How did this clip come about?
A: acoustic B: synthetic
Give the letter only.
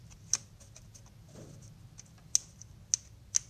A